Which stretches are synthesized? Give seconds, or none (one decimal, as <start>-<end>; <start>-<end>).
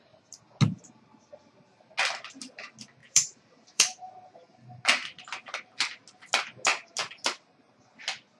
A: 3.0-4.1